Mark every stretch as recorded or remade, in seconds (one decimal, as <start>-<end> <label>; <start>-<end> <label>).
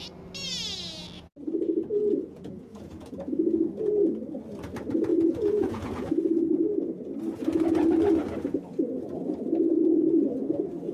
0.0-2.0 recorded; 2.0-3.7 remade; 3.7-5.1 recorded; 5.1-6.1 remade; 6.1-10.9 recorded